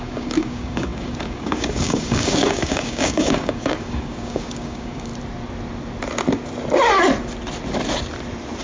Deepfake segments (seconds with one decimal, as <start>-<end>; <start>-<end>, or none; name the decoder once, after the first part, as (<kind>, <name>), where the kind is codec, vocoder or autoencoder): 0.0-5.1 (codec, DAC)